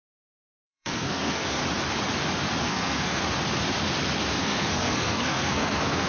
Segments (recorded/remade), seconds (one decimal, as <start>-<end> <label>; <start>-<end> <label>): 0.0-1.6 remade; 1.6-2.6 recorded; 2.6-3.2 remade; 3.2-4.4 recorded; 4.4-6.1 remade